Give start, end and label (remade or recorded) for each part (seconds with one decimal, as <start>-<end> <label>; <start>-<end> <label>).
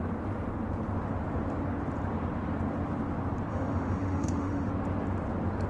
0.0-3.5 recorded; 3.5-4.7 remade; 4.7-5.7 recorded